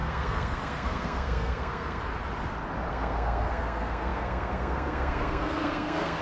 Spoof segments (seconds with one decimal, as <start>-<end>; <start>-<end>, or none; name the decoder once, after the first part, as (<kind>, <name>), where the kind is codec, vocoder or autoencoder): 0.0-2.0 (codec, SNAC); 2.9-6.2